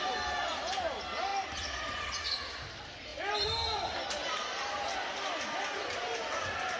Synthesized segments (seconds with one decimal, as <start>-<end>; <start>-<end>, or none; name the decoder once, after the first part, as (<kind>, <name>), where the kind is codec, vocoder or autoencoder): 3.1-4.8 (vocoder, BigVGAN v2)

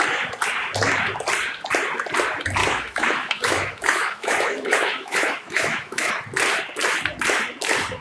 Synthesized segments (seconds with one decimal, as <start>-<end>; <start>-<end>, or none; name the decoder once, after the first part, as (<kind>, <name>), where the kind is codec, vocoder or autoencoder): 2.6-6.1 (autoencoder, DAC-VAE)